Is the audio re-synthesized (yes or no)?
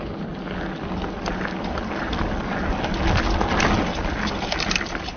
no